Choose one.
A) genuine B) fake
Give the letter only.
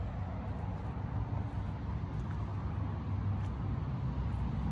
A